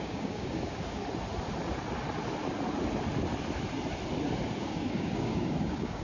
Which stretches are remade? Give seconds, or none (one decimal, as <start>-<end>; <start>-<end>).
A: 0.0-1.0; 4.6-6.0